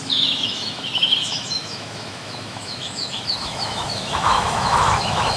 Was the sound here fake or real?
fake